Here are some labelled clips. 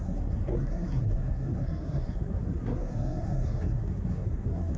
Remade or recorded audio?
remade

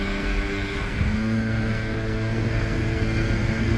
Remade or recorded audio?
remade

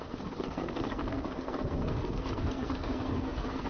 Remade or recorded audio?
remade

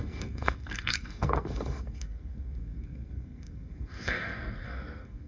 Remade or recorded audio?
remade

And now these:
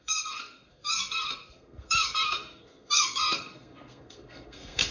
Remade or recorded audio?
remade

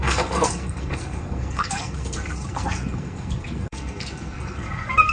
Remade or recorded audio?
remade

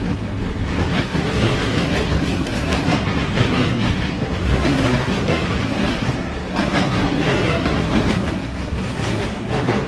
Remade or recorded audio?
remade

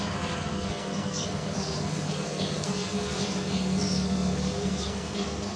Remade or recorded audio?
remade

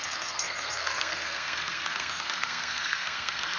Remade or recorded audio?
remade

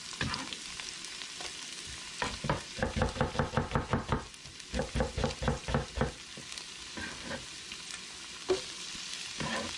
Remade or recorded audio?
recorded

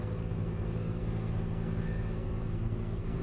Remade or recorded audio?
remade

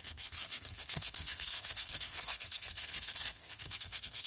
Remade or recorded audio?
remade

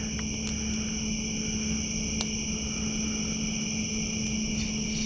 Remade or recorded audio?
recorded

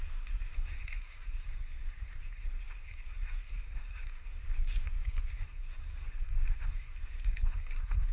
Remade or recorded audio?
remade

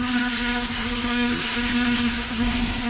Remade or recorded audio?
remade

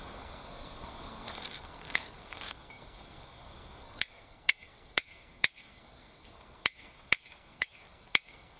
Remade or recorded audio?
remade